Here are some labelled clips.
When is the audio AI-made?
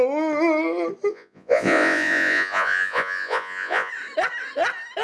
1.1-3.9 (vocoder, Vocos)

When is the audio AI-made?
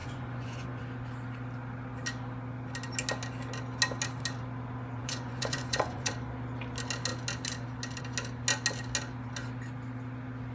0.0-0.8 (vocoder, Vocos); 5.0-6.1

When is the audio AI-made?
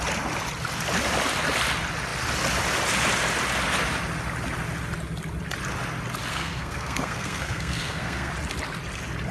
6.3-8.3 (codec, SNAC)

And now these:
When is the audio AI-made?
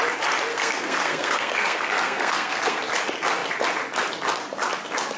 0.5-2.8 (codec, SNAC)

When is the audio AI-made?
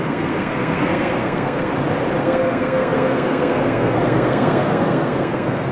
0.0-1.7 (codec, SNAC); 2.2-5.7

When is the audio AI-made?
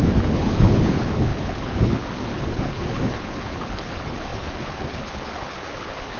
0.0-6.2 (codec, HILCodec)